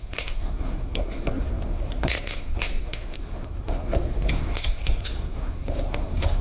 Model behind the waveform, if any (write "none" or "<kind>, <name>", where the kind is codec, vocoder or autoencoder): codec, SNAC